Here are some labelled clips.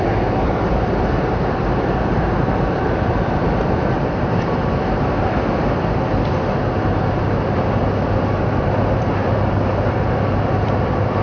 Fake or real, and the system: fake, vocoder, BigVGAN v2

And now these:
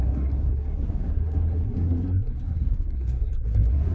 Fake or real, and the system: fake, codec, SNAC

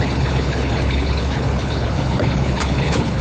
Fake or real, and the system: fake, codec, HILCodec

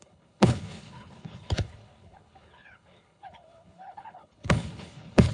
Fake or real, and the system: fake, codec, HILCodec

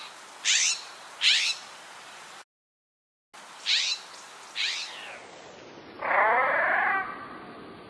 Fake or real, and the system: real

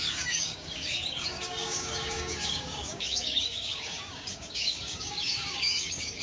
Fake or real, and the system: fake, codec, DAC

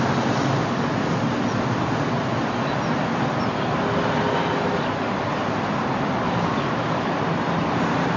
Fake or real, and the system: real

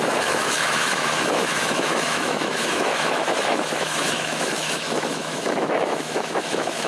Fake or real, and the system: fake, autoencoder, DAC-VAE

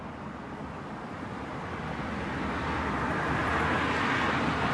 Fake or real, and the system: real